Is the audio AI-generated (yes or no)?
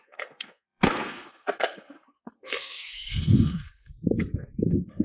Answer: yes